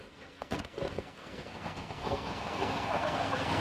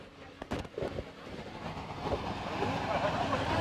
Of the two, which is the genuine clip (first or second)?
second